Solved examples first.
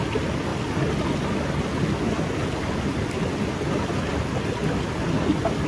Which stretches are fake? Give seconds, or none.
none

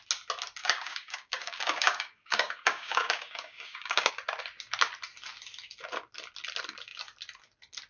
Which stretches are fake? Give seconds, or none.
0.6-4.1 (codec, DAC)

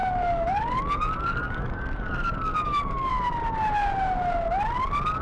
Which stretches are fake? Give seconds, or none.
0.0-3.1 (codec, DAC)